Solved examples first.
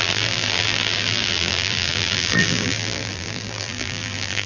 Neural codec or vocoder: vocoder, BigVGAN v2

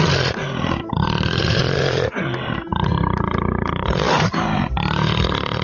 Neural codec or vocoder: vocoder, BigVGAN v2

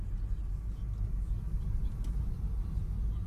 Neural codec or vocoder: none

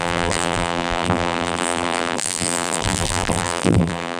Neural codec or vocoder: vocoder, BigVGAN v2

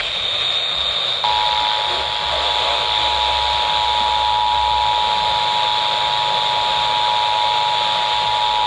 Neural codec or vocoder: none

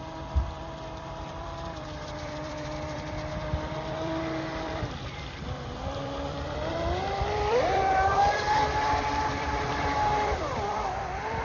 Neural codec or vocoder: vocoder, BigVGAN v2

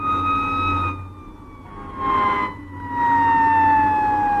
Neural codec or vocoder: none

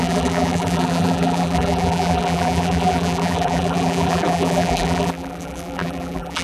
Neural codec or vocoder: vocoder, BigVGAN v2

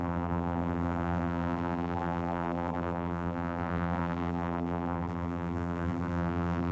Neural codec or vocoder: vocoder, BigVGAN v2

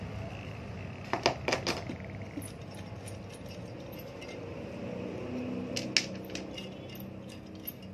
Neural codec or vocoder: none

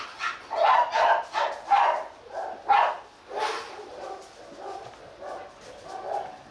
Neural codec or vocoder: none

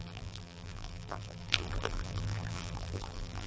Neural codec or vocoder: vocoder, BigVGAN v2